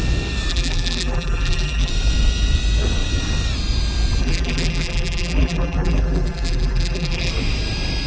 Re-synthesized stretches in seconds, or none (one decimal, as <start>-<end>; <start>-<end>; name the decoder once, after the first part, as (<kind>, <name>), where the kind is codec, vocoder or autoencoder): 0.5-1.9 (vocoder, BigVGAN v2); 4.2-7.3